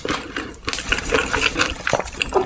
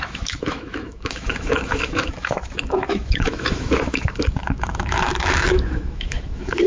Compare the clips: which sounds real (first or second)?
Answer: first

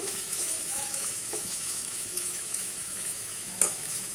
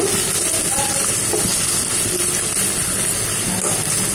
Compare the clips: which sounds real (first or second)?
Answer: second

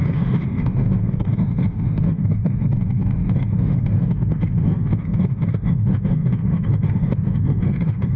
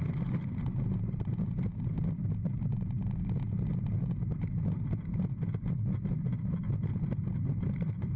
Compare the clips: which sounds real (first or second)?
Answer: second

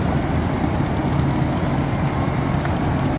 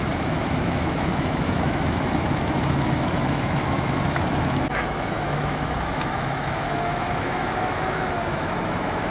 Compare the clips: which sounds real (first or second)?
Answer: first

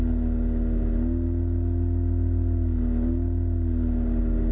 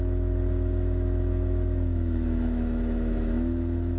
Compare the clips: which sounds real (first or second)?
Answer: first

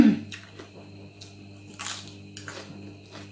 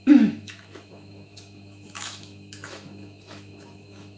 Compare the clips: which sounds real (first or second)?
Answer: first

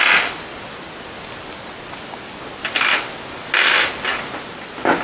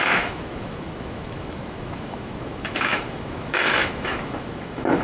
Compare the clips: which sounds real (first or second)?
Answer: first